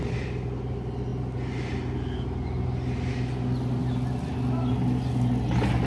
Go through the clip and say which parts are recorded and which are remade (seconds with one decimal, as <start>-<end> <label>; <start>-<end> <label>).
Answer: 0.0-5.9 recorded